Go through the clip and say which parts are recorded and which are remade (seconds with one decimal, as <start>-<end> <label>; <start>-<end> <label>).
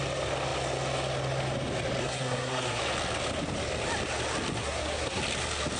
0.0-2.0 recorded; 2.0-2.8 remade; 2.8-4.6 recorded; 4.6-5.2 remade; 5.2-5.8 recorded